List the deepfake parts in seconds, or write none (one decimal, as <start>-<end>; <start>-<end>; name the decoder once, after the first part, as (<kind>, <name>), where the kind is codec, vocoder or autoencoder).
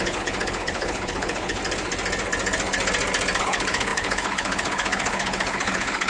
0.0-1.6 (codec, HILCodec); 3.4-6.1